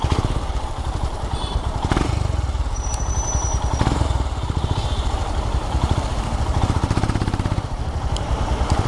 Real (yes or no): no